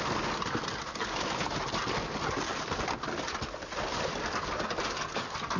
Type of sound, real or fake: real